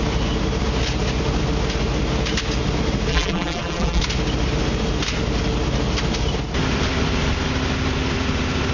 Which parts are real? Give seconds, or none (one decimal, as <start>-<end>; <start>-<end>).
0.0-3.1; 4.0-8.7